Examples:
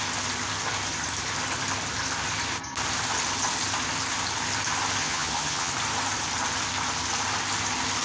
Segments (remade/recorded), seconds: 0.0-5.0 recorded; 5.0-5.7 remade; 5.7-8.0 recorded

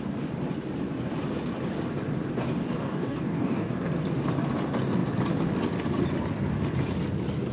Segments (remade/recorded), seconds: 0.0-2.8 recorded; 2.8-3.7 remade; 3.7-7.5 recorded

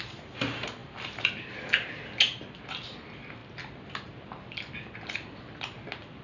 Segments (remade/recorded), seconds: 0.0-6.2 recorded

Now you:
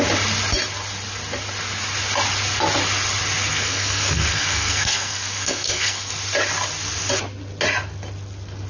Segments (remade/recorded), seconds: 0.0-3.5 recorded; 3.5-6.1 remade; 6.1-8.7 recorded